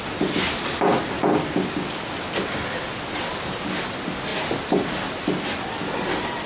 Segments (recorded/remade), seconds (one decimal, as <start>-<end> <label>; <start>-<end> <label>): 0.0-6.5 recorded